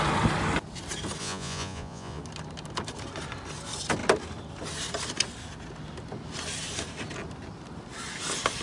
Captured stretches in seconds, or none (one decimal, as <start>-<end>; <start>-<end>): 0.0-1.2; 2.2-8.6